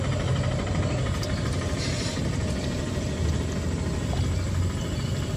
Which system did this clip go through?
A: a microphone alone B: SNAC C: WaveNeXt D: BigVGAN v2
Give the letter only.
A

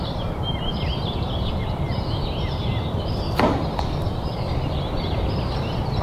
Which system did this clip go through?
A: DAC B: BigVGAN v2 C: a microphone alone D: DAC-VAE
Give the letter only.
B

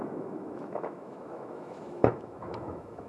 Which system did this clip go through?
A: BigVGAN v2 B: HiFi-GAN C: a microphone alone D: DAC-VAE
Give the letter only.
D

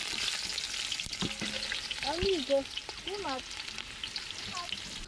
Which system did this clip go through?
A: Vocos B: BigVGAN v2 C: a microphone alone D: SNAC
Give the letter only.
C